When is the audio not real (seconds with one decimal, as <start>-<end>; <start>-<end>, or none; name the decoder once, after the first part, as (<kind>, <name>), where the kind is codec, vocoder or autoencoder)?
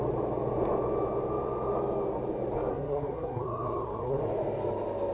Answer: 2.7-4.2 (codec, SNAC)